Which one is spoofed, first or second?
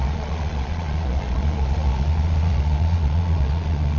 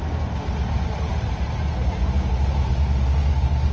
first